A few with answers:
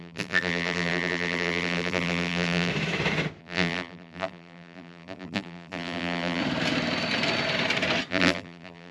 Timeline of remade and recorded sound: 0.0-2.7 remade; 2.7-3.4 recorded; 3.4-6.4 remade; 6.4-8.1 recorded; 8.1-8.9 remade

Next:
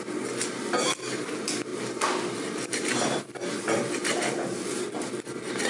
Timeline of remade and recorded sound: 0.0-1.7 recorded; 1.7-5.1 remade; 5.1-5.7 recorded

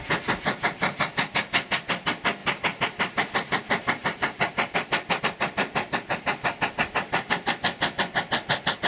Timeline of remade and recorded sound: 0.0-2.4 recorded; 2.4-5.2 remade; 5.2-8.9 recorded

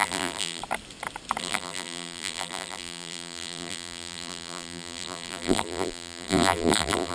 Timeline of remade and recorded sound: 0.0-0.6 remade; 0.6-1.4 recorded; 1.4-7.1 remade

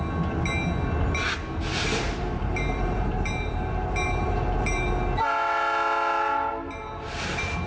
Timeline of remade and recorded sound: 0.0-1.7 recorded; 1.7-4.9 remade; 4.9-6.5 recorded; 6.5-7.7 remade